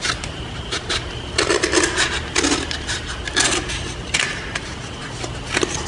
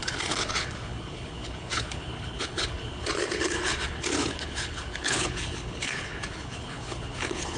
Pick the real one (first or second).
first